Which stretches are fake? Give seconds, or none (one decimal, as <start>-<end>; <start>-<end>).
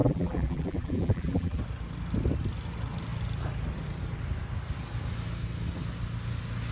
0.0-1.6